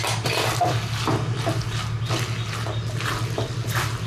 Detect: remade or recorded recorded